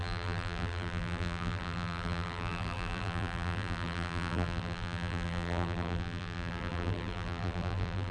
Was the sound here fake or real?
fake